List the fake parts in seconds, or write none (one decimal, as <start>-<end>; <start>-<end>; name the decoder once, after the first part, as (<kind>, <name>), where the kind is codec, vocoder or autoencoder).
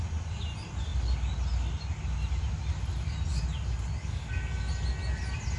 none